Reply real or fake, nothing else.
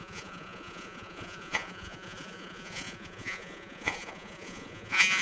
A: fake